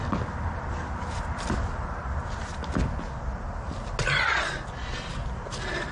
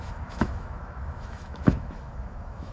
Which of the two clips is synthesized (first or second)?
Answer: second